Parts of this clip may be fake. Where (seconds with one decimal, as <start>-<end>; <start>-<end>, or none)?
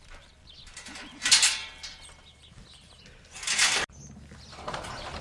none